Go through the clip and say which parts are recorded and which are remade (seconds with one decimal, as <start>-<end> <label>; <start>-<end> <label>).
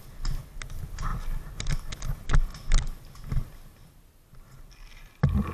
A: 0.0-5.5 recorded